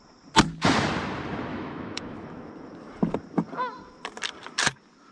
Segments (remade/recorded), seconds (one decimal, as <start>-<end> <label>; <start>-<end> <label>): 0.0-1.5 recorded; 1.5-2.5 remade; 2.5-5.1 recorded